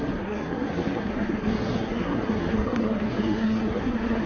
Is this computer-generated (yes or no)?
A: yes